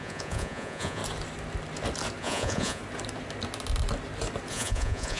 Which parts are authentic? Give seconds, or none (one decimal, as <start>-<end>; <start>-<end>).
1.0-2.2; 2.8-4.5